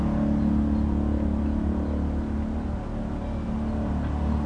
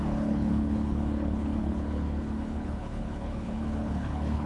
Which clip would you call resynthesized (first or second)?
second